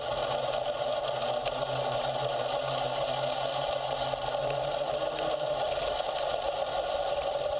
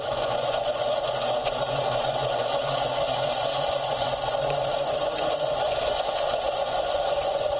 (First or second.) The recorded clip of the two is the first